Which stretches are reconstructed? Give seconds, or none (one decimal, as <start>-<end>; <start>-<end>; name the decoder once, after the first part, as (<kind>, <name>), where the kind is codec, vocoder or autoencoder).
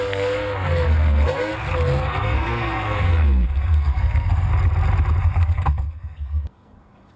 0.0-1.5 (codec, SNAC); 2.0-4.5; 5.2-7.2